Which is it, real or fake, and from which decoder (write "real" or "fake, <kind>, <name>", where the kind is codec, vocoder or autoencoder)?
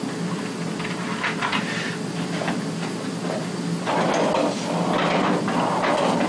real